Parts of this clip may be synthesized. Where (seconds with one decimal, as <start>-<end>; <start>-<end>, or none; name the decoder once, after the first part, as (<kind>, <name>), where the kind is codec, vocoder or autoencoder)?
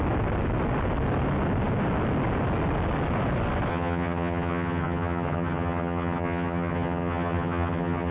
3.7-8.1 (vocoder, HiFi-GAN)